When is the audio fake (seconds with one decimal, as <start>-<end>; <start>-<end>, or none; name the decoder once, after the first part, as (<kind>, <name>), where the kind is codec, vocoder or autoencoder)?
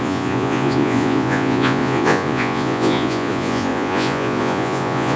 0.0-5.2 (vocoder, Vocos)